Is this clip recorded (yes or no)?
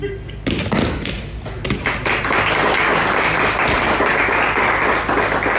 yes